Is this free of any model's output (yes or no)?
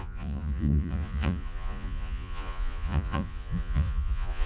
no